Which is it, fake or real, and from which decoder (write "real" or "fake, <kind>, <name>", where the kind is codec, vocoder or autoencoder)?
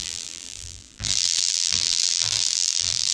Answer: fake, vocoder, BigVGAN v2